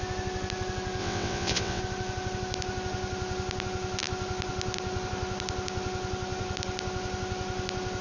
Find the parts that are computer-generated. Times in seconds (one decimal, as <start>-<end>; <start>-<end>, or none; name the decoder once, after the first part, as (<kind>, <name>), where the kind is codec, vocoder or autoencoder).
1.0-1.8 (vocoder, WaveNeXt)